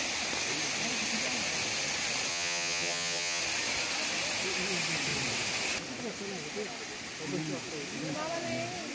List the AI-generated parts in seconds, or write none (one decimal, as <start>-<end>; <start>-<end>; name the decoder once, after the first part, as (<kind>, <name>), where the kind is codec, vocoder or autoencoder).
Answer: 2.3-3.4 (vocoder, HiFi-GAN)

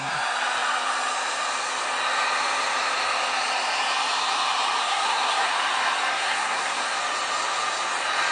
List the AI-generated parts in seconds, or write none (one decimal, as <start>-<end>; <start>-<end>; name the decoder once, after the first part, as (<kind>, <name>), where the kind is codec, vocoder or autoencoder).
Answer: 4.8-5.5 (codec, SNAC); 6.1-7.0